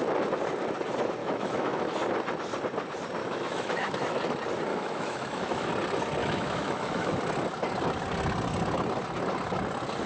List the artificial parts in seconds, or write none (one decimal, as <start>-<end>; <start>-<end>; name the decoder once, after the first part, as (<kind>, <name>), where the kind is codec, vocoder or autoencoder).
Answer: 1.2-1.8 (autoencoder, DAC-VAE); 3.2-4.2; 4.7-5.7; 6.2-7.2